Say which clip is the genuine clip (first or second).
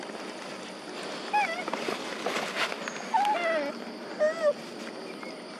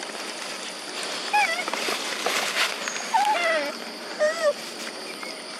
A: first